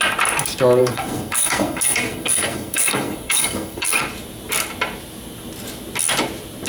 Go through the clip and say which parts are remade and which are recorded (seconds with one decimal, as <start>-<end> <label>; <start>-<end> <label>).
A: 0.0-0.8 recorded; 0.8-4.0 remade; 4.0-6.7 recorded